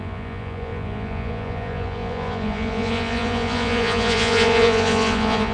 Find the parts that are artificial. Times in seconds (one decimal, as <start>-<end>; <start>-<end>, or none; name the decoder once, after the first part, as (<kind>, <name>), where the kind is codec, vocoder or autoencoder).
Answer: 0.0-5.5 (vocoder, Vocos)